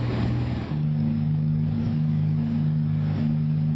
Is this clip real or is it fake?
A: fake